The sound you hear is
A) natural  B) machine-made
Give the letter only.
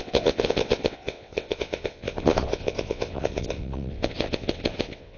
B